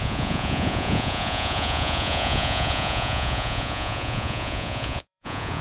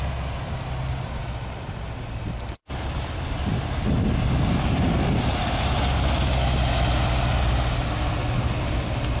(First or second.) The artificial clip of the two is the first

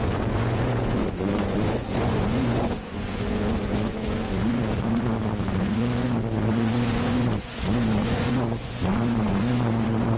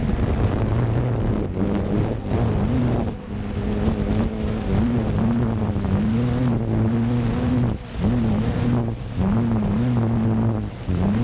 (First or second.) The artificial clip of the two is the first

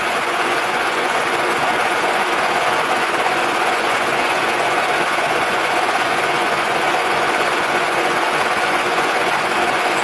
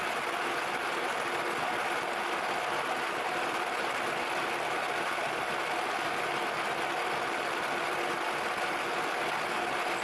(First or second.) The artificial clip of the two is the first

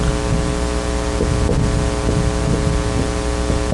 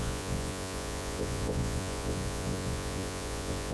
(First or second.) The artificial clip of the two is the second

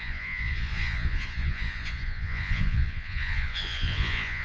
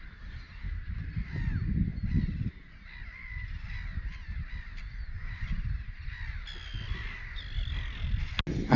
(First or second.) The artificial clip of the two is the first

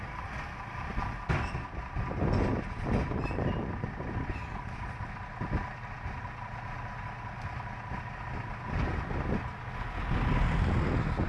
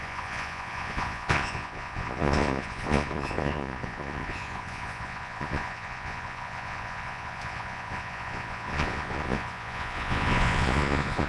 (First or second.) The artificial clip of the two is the second